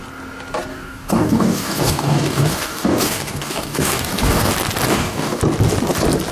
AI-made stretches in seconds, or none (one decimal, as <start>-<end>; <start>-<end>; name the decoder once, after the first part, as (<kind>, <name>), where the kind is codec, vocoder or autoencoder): 0.7-4.5 (codec, DAC); 4.9-5.4